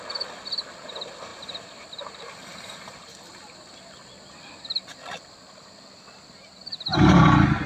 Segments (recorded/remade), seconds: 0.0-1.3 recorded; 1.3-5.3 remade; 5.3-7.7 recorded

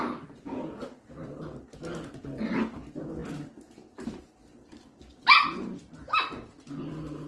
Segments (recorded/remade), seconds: 0.0-7.3 recorded

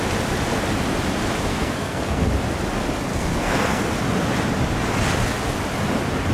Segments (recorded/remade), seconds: 0.0-1.5 recorded; 1.5-2.3 remade; 2.3-3.1 recorded; 3.1-3.8 remade; 3.8-6.3 recorded

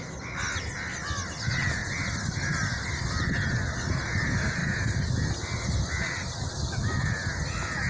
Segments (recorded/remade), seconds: 0.0-7.9 recorded

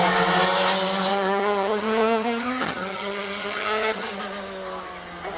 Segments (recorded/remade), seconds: 0.0-1.1 recorded; 1.1-4.2 remade; 4.2-5.4 recorded